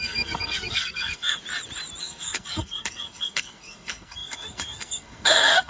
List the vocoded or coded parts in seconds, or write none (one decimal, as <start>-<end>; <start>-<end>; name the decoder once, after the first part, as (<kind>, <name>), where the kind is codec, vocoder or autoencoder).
0.0-1.4 (codec, SNAC); 2.0-5.7